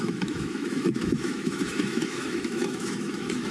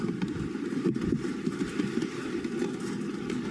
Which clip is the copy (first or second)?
first